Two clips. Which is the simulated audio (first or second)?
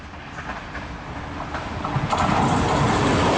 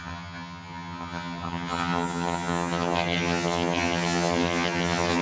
second